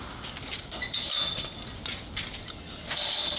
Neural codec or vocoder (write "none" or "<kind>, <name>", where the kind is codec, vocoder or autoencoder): none